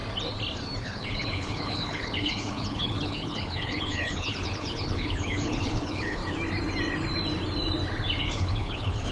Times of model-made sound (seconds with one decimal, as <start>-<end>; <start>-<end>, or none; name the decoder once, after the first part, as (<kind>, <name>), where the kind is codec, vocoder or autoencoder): 0.8-6.2 (codec, HILCodec); 8.2-9.1